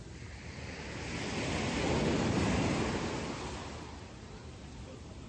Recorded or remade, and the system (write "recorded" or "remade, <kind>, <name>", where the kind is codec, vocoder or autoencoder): recorded